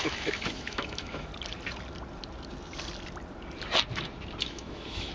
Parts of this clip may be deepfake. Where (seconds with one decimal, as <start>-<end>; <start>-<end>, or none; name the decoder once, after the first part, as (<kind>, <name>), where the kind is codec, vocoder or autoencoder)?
0.0-1.3 (autoencoder, DAC-VAE); 4.4-5.1